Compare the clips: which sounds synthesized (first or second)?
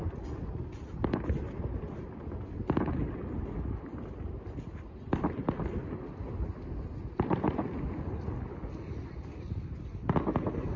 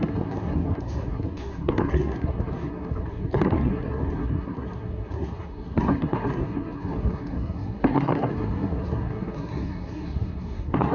second